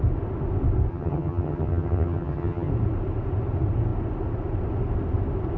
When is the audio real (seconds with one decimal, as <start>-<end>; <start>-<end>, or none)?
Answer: 0.0-0.9; 2.7-5.6